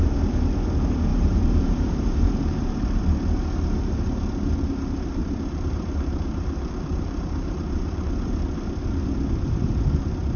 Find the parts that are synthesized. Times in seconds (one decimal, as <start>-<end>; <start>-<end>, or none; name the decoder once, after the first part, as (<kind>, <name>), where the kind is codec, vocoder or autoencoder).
1.1-3.0 (vocoder, BigVGAN v2); 5.2-8.3